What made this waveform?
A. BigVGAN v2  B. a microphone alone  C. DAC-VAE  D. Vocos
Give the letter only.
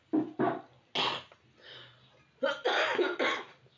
B